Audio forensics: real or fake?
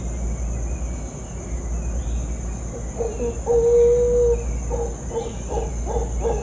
real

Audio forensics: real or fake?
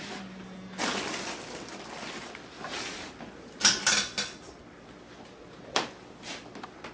real